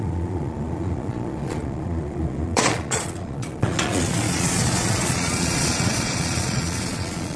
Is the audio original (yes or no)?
no